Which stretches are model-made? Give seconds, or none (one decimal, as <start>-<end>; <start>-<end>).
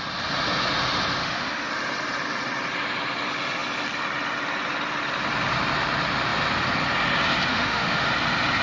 1.2-1.7; 7.5-8.1